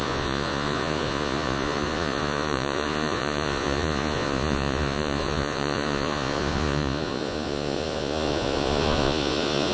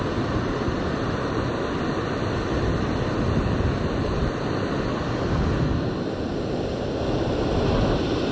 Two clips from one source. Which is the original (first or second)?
second